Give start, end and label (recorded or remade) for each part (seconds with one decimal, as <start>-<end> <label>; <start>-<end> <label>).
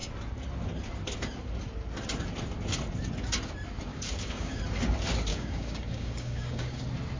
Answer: 0.0-3.9 recorded; 3.9-4.6 remade; 4.6-5.3 recorded; 5.3-6.8 remade; 6.8-7.2 recorded